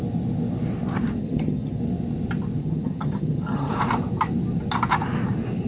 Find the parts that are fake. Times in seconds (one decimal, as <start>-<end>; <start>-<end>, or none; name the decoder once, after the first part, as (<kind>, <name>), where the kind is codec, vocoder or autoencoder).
1.2-1.8 (vocoder, HiFi-GAN); 2.6-3.7